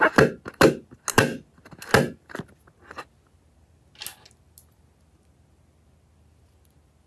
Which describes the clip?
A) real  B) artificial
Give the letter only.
A